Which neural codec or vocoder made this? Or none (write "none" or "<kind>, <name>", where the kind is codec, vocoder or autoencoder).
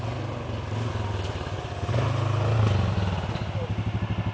none